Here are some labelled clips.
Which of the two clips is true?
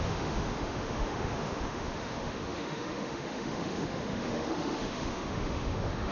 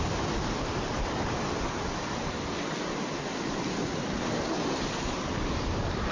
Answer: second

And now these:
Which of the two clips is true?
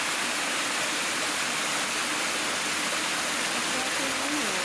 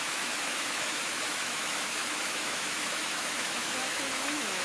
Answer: first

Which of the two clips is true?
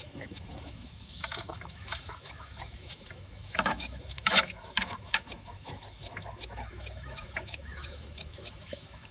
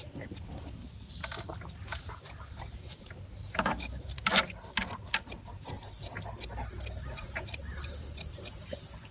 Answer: second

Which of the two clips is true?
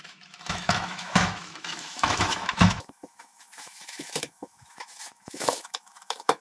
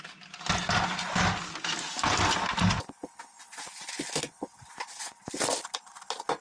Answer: second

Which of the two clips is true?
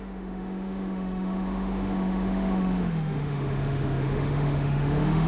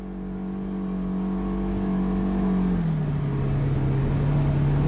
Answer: second